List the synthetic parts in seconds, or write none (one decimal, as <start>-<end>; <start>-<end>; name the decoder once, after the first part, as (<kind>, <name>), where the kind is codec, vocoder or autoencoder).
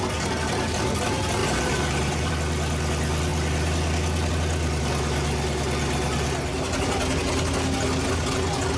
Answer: 1.4-2.3 (vocoder, BigVGAN v2)